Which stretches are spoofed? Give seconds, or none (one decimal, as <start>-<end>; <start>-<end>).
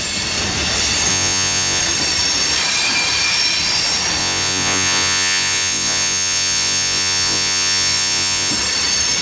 1.1-1.8; 4.2-8.5